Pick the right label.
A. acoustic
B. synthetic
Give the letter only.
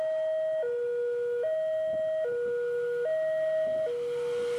A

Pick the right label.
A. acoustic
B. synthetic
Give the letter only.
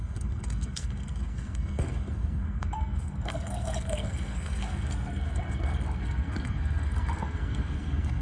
B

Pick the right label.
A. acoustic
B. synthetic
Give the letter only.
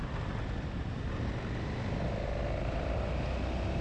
A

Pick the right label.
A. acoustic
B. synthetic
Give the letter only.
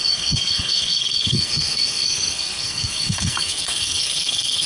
B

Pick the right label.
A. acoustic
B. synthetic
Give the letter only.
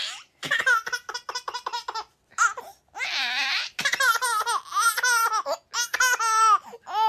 A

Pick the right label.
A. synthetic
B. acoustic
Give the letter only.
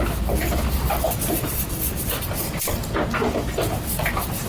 B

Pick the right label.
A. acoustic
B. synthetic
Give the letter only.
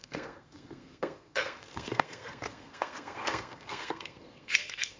B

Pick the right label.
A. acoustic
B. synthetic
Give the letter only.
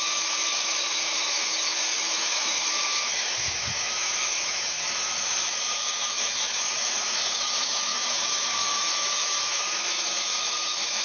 B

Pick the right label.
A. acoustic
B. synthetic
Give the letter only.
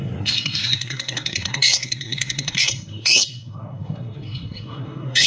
B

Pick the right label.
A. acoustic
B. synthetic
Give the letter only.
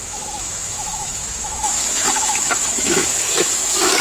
B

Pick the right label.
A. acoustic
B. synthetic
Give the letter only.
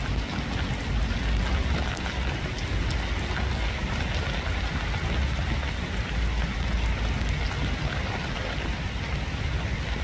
A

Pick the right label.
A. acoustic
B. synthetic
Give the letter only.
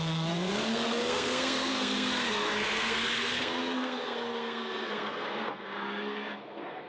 B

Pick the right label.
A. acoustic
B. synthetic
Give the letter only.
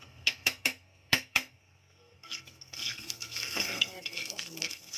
B